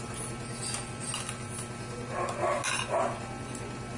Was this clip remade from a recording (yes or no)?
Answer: no